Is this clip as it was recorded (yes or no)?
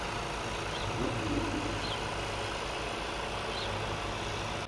yes